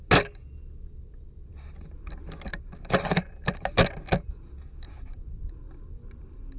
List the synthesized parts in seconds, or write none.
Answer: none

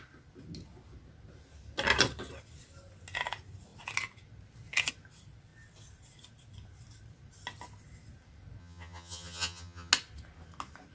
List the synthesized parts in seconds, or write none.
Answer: 8.6-9.9 (vocoder, HiFi-GAN)

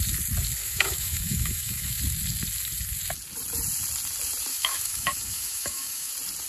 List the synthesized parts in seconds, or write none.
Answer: 0.6-2.0 (autoencoder, DAC-VAE); 4.5-6.1

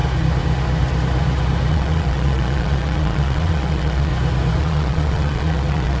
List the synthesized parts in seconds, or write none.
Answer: 1.7-4.1 (vocoder, Vocos); 4.6-6.0

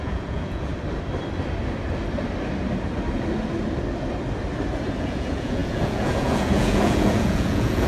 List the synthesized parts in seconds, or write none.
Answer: 0.0-0.7 (vocoder, Vocos); 5.0-7.9

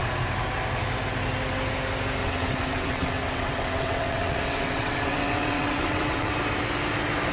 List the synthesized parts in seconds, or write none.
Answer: 2.2-6.3 (vocoder, WaveNeXt)

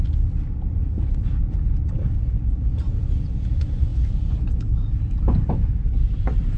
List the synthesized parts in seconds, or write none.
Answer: none

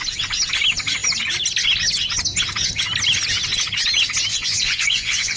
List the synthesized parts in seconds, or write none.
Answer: 4.3-5.4 (vocoder, Vocos)